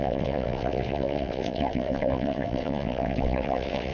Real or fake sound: fake